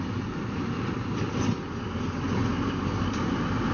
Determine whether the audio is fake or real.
real